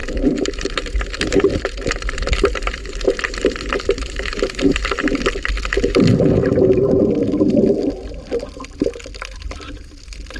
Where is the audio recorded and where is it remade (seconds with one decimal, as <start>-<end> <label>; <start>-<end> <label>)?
0.0-5.2 remade; 5.2-10.4 recorded